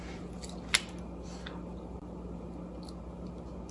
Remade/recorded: recorded